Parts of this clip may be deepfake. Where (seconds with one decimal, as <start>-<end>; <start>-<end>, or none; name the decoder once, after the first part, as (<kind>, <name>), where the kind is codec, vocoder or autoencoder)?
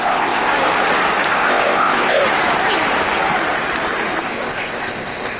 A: 0.0-0.5 (codec, ZipCodec); 1.3-2.2; 4.2-5.4